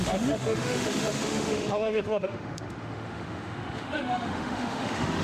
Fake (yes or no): yes